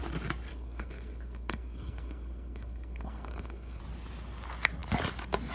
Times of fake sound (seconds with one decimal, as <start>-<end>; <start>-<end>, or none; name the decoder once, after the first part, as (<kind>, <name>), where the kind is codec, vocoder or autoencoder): 0.5-3.8 (codec, SNAC)